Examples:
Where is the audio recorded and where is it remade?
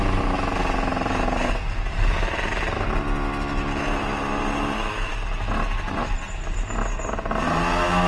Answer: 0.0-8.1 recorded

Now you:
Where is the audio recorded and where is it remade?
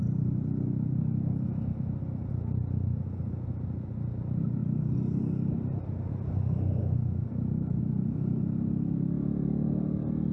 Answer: 0.0-6.8 recorded; 6.8-7.8 remade; 7.8-10.3 recorded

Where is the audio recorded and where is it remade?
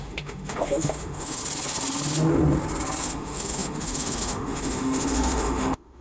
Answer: 0.0-1.4 remade; 1.4-3.0 recorded; 3.0-6.0 remade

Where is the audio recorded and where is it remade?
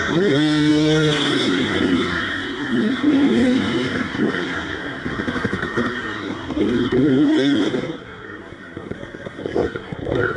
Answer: 0.0-10.4 remade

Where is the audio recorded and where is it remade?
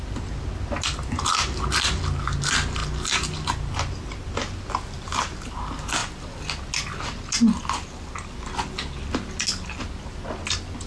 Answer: 0.0-10.9 recorded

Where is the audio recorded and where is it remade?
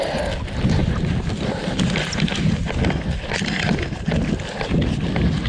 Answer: 0.0-5.5 recorded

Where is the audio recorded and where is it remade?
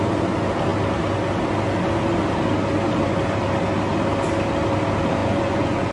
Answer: 0.0-5.2 recorded; 5.2-5.9 remade